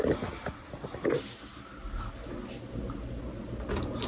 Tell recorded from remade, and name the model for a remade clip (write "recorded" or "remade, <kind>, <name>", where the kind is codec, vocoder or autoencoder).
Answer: recorded